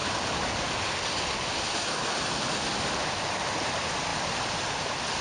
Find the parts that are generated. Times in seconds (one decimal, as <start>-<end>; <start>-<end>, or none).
0.0-3.1; 4.1-5.2